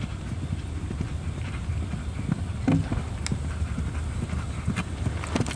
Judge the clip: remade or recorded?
recorded